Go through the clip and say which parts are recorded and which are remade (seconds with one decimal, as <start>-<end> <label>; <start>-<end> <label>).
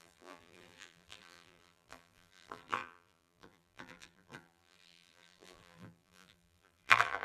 0.0-7.2 remade